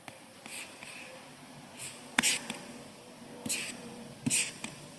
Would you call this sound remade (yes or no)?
yes